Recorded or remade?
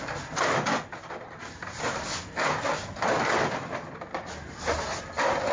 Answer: recorded